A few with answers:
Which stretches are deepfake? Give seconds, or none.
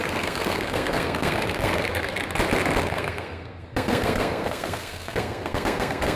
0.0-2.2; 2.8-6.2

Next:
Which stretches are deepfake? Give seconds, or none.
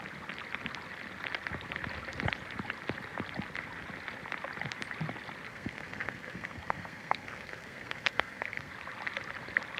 5.5-8.7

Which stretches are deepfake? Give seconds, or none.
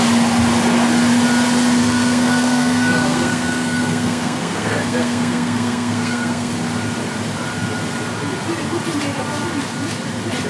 1.8-6.5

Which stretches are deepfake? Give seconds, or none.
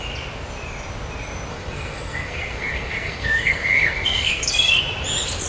1.5-4.8